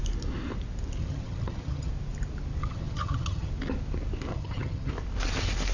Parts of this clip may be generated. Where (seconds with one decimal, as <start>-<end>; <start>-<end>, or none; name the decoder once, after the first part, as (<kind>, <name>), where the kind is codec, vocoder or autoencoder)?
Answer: 1.0-1.9 (vocoder, HiFi-GAN); 2.6-3.5; 4.3-4.9